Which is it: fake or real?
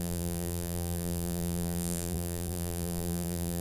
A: fake